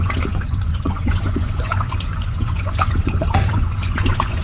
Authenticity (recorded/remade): remade